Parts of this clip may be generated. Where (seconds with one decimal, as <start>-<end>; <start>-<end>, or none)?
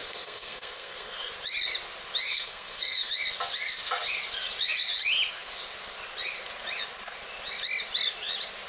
0.0-1.3; 2.3-3.1